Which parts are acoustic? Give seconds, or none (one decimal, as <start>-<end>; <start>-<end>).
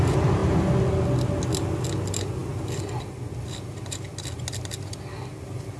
0.0-5.8